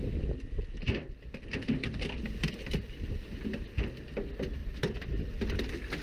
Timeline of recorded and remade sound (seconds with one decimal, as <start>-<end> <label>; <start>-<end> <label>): 0.0-4.6 recorded; 4.6-5.5 remade; 5.5-6.0 recorded